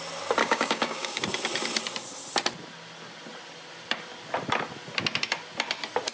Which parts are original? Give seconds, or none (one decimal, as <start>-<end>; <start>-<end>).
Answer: 0.0-0.4; 1.2-6.1